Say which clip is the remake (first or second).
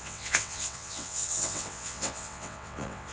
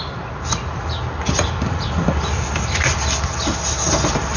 first